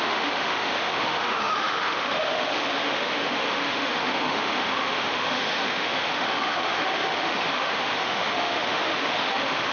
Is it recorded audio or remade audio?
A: remade